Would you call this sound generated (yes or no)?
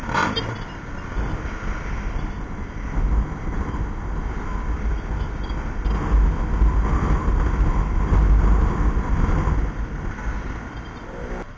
no